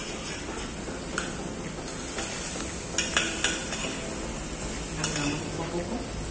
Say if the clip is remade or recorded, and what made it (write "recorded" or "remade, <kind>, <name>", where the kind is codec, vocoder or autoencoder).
recorded